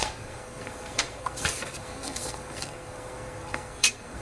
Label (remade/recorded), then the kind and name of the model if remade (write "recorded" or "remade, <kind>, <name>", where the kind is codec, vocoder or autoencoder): remade, codec, SNAC